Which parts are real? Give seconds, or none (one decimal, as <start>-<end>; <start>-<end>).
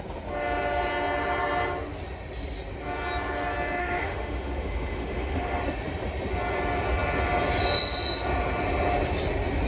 0.0-3.8; 5.6-9.7